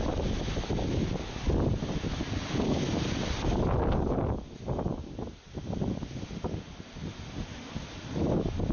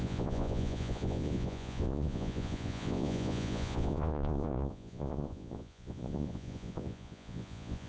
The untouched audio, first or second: first